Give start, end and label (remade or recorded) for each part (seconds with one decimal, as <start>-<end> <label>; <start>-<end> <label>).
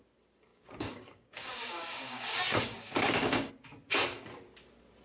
0.0-0.5 recorded; 0.5-3.5 remade; 3.5-5.0 recorded